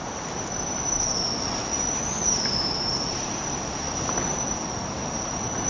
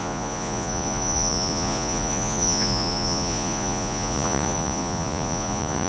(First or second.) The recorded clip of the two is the first